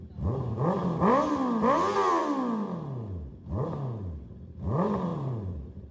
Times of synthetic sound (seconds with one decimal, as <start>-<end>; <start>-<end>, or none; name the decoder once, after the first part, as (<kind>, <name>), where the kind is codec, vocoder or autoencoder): 0.8-1.3 (vocoder, BigVGAN v2); 5.1-5.9